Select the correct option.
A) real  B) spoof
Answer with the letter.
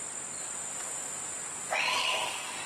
A